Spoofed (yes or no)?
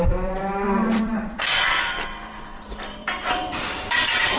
yes